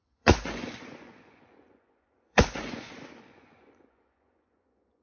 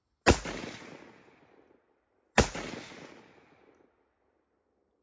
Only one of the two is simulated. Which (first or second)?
first